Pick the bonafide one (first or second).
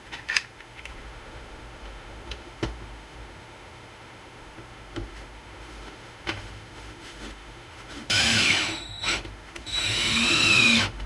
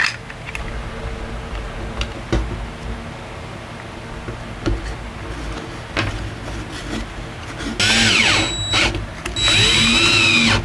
second